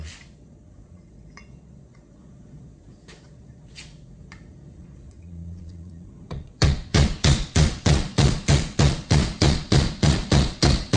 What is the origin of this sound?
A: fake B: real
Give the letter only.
A